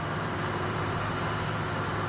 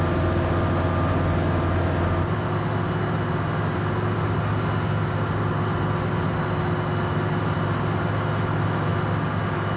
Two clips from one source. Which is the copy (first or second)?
first